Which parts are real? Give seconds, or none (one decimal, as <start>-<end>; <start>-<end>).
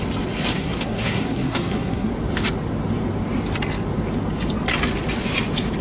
0.0-0.5; 2.1-5.8